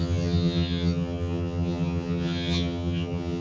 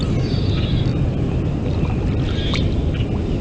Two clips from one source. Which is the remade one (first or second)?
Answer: first